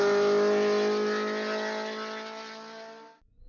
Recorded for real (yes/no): yes